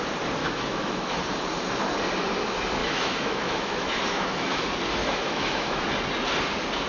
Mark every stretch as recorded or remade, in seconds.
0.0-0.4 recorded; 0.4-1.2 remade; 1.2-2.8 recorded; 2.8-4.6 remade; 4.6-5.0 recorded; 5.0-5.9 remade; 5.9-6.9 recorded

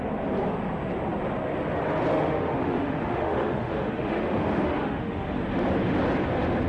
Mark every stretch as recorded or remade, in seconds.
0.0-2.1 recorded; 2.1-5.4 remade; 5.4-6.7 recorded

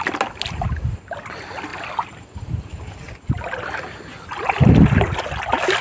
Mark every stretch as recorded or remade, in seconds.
0.0-5.8 recorded

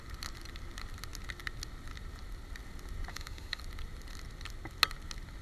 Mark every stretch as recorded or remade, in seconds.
0.0-3.1 recorded; 3.1-3.6 remade; 3.6-5.4 recorded